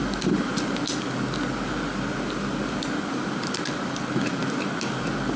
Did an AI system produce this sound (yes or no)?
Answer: no